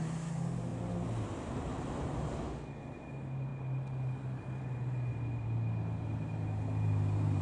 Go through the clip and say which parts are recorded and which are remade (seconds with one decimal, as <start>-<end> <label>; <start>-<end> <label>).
0.0-7.4 recorded